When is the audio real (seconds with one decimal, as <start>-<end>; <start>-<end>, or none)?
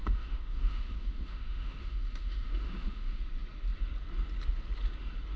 3.2-5.4